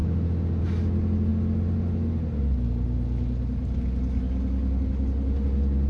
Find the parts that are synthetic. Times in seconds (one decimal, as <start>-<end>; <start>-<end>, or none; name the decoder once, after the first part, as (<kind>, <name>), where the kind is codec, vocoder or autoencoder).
none